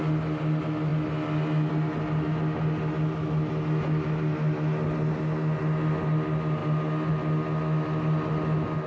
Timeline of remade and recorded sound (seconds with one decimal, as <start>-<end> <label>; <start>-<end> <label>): 0.0-8.9 recorded